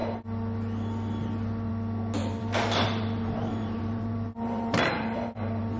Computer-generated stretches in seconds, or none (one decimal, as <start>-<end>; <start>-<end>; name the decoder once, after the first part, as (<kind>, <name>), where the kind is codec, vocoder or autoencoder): 2.2-5.8 (vocoder, BigVGAN v2)